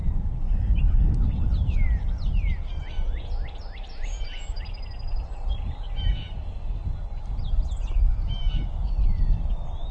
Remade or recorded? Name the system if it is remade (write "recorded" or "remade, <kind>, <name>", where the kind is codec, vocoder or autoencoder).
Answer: recorded